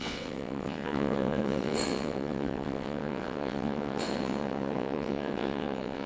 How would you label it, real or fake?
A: fake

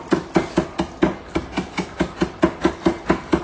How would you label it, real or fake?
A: real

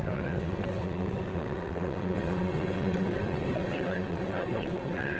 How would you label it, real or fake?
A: fake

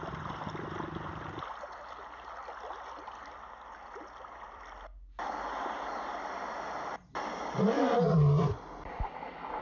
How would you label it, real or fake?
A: real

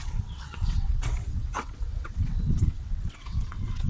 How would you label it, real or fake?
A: fake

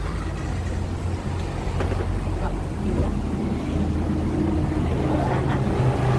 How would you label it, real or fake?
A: real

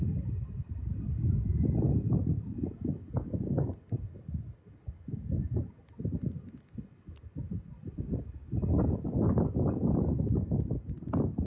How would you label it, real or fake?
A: real